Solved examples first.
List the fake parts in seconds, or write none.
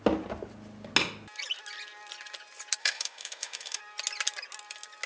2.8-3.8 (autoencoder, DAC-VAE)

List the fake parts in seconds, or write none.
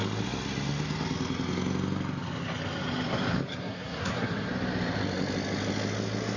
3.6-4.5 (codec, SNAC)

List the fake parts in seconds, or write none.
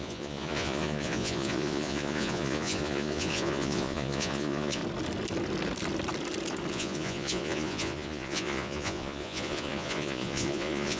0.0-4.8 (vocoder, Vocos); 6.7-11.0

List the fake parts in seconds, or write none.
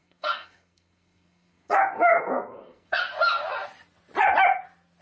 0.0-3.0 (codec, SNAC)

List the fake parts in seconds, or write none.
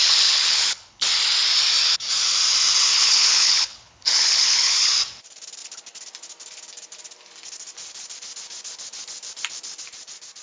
0.0-1.1 (codec, HILCodec); 2.9-4.9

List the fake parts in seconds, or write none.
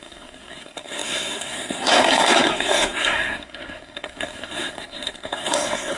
0.0-6.0 (codec, SNAC)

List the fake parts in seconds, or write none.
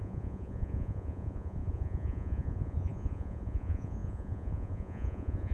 0.0-5.5 (vocoder, Vocos)